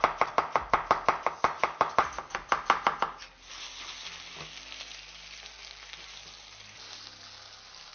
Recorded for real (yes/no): yes